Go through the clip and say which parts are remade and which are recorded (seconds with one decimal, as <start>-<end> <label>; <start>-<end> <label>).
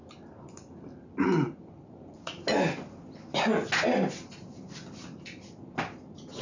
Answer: 0.0-6.4 recorded